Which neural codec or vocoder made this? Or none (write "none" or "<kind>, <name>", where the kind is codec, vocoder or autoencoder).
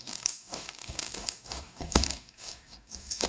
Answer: codec, DAC